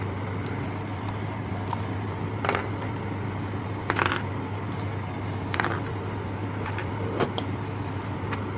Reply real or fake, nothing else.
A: real